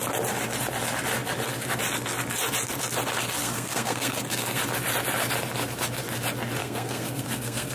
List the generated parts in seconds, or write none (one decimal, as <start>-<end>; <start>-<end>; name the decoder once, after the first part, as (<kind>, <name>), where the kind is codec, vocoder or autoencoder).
3.4-4.6 (codec, SNAC); 6.6-7.7